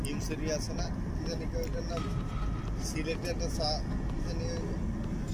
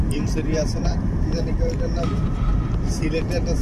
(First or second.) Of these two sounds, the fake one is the second